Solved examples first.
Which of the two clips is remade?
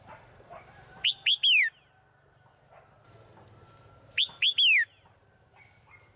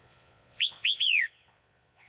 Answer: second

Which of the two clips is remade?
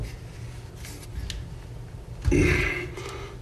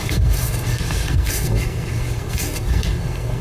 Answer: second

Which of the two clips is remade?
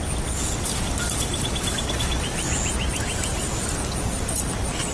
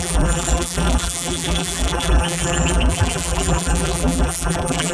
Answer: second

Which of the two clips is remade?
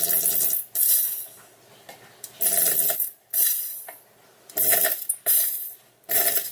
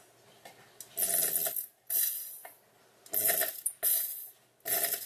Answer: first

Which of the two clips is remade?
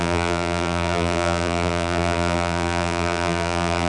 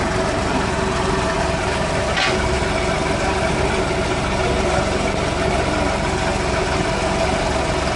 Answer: first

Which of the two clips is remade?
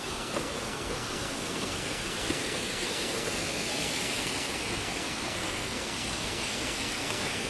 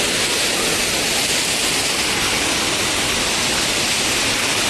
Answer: first